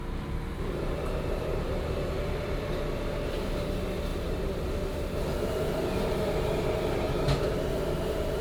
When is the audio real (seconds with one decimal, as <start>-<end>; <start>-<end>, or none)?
0.0-4.1; 4.7-8.4